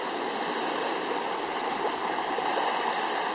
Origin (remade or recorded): recorded